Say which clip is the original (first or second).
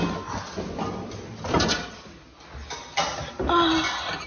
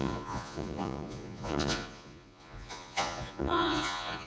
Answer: first